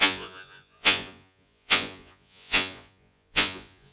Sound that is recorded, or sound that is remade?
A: remade